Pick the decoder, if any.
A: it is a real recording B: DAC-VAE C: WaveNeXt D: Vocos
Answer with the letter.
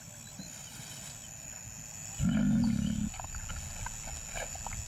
A